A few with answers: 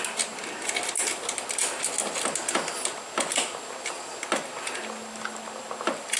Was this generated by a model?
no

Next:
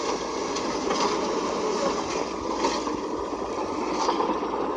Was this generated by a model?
no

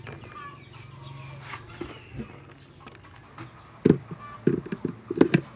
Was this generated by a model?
no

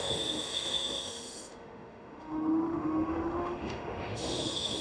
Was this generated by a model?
yes